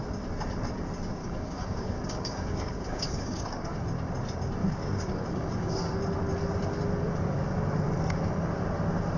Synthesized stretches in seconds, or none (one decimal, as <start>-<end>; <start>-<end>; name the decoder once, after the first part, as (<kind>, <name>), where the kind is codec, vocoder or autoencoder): 1.2-3.8 (codec, DAC); 4.6-5.8